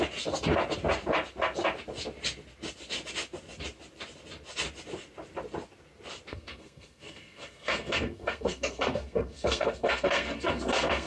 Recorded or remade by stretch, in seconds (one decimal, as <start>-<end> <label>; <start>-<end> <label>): 0.0-6.3 recorded; 6.3-11.1 remade